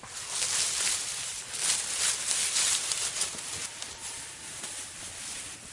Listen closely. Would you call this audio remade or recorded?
recorded